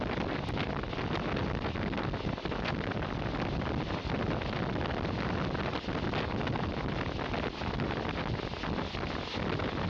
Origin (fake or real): real